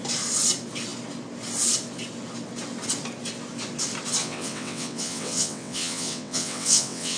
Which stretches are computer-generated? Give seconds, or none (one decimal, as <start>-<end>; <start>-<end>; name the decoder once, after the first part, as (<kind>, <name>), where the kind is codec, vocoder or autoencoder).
4.2-7.2 (vocoder, WaveNeXt)